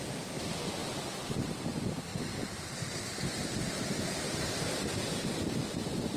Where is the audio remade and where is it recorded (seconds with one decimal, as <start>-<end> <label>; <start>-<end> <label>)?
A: 0.0-0.8 recorded; 0.8-1.5 remade; 1.5-2.1 recorded; 2.1-4.8 remade; 4.8-6.2 recorded